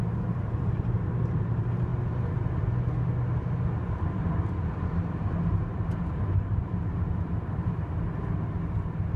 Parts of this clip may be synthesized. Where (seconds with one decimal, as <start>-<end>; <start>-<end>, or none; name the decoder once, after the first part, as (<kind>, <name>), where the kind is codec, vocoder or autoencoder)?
0.0-1.9 (vocoder, BigVGAN v2); 3.8-9.2